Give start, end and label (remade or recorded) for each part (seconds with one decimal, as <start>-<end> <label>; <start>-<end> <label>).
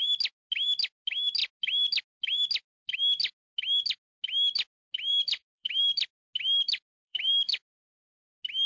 0.0-5.1 recorded; 5.1-6.1 remade; 6.1-7.0 recorded; 7.0-7.6 remade; 7.6-8.7 recorded